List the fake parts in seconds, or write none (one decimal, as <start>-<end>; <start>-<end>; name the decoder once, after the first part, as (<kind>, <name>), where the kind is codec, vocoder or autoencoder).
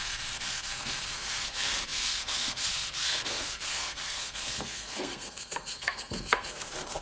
0.0-7.0 (codec, SNAC)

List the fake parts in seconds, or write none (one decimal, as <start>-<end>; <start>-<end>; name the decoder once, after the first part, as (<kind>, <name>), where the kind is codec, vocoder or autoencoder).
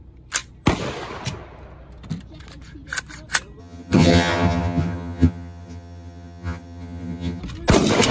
3.6-7.4 (vocoder, HiFi-GAN)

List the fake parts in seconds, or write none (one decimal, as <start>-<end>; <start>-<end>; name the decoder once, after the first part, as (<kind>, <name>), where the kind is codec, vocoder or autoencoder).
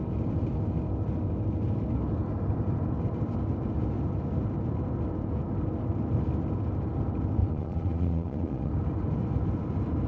7.4-8.7 (vocoder, Vocos)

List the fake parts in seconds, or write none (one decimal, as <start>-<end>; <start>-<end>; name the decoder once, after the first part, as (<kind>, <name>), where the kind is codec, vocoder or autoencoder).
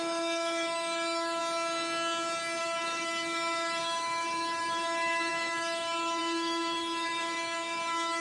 0.0-1.4 (autoencoder, DAC-VAE); 2.6-8.2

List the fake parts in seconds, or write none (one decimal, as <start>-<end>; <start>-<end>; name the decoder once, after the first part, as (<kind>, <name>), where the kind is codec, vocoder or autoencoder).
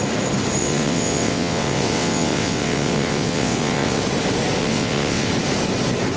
0.6-4.0 (vocoder, WaveNeXt); 4.6-5.3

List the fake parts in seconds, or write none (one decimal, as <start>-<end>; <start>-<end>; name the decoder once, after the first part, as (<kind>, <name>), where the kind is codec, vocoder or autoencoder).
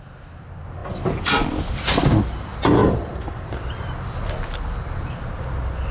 2.8-3.8 (vocoder, BigVGAN v2)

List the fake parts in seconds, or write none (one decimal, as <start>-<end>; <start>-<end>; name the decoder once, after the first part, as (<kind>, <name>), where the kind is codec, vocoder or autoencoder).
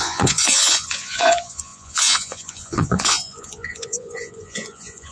0.0-5.1 (vocoder, Vocos)